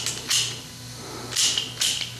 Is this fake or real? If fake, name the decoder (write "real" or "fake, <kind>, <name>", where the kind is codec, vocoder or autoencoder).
real